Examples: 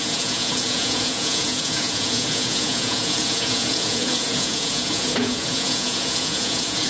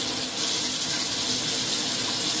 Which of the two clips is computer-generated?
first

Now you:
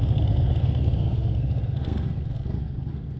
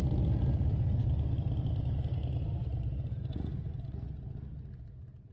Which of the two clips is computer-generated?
first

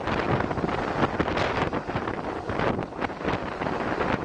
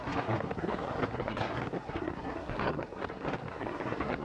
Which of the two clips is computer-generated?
second